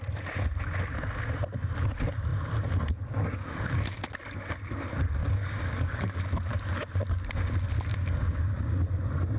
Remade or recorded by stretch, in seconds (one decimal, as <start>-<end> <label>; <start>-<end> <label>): 0.0-5.2 recorded; 5.2-6.2 remade; 6.2-7.9 recorded; 7.9-8.7 remade; 8.7-9.4 recorded

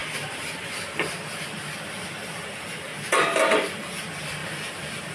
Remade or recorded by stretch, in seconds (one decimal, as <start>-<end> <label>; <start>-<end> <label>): 0.0-4.4 recorded; 4.4-5.1 remade

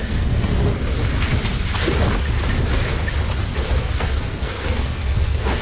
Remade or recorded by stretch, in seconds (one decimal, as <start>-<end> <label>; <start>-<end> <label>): 0.0-0.5 remade; 0.5-3.8 recorded; 3.8-5.6 remade

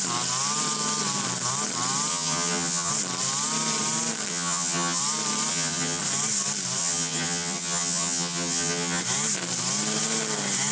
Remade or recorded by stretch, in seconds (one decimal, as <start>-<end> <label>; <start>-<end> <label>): 0.0-2.1 recorded; 2.1-2.9 remade; 2.9-4.3 recorded; 4.3-5.0 remade; 5.0-5.5 recorded; 5.5-6.0 remade; 6.0-6.8 recorded; 6.8-9.0 remade; 9.0-10.7 recorded

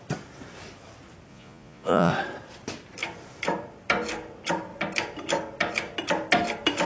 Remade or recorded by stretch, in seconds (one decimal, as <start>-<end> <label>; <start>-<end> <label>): 0.0-1.3 recorded; 1.3-2.1 remade; 2.1-6.9 recorded

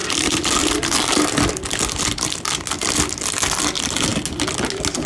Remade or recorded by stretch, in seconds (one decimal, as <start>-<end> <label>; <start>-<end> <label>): 0.0-5.1 recorded